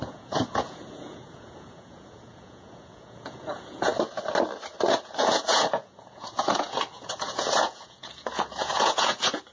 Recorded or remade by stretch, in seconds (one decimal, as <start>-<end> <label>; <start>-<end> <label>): 0.0-3.9 remade; 3.9-4.9 recorded; 4.9-9.5 remade